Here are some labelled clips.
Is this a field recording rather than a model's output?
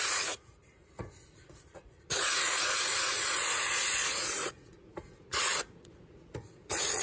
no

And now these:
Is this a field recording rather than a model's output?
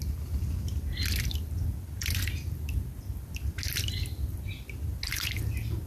yes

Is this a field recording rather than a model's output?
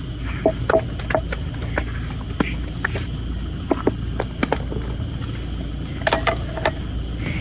yes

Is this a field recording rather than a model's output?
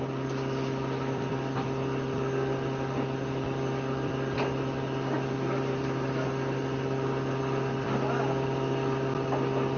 yes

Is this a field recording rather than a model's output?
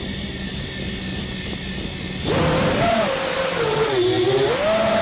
yes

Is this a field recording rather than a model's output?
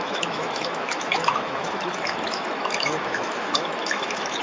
no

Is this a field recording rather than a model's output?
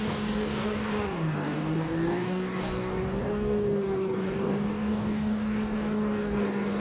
no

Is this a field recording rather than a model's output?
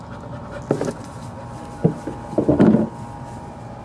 yes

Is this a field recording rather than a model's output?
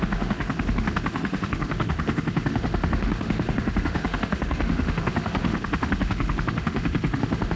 no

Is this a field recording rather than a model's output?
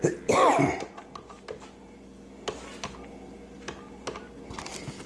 yes